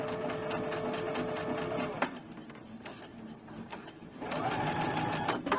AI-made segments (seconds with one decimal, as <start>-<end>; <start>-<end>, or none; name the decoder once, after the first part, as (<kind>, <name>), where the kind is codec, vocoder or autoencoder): 2.9-4.8 (vocoder, BigVGAN v2)